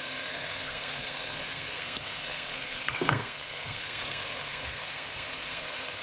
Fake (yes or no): yes